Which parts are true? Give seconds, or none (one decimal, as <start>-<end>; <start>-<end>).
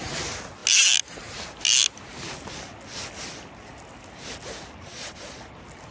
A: 0.0-4.9; 5.4-5.9